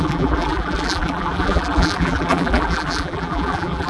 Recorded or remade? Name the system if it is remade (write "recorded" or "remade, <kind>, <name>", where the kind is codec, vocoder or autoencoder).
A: remade, vocoder, BigVGAN v2